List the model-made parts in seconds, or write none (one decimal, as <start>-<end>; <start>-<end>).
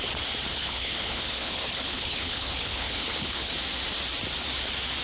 0.5-3.5